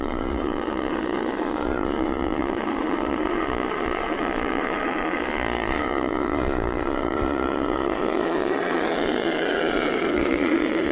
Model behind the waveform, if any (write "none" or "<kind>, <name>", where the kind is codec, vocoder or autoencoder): vocoder, Vocos